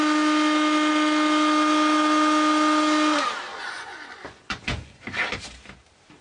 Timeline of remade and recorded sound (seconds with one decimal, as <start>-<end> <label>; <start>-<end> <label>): 0.0-3.5 recorded; 3.5-5.0 remade; 5.0-6.2 recorded